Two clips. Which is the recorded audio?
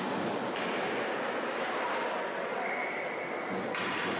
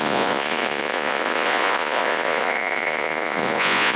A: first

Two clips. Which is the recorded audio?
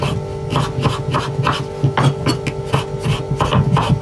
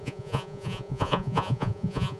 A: first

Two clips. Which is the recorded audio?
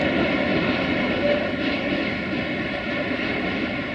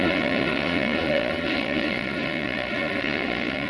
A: first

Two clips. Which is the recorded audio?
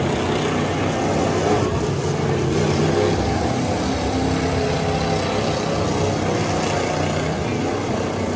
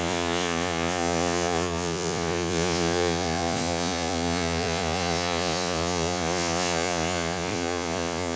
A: first